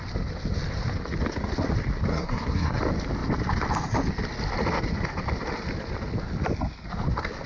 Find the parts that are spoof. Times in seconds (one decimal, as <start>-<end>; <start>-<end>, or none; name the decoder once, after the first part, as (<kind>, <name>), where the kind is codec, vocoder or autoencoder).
2.1-2.8 (codec, SNAC)